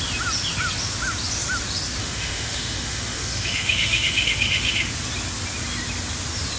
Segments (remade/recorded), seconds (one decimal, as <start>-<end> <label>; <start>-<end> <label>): 0.0-2.0 recorded; 2.0-4.9 remade; 4.9-6.6 recorded

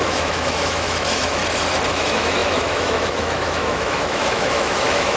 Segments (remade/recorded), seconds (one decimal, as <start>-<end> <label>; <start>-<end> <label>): 0.0-1.4 remade; 1.4-1.9 recorded; 1.9-5.2 remade

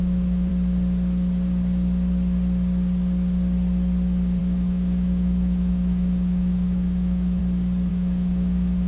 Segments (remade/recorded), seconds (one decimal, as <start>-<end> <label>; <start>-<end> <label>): 0.0-0.5 remade; 0.5-4.4 recorded; 4.4-7.4 remade; 7.4-7.9 recorded; 7.9-8.9 remade

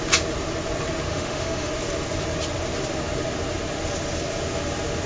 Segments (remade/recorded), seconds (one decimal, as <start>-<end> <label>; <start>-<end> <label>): 0.0-1.1 recorded; 1.1-1.7 remade; 1.7-5.1 recorded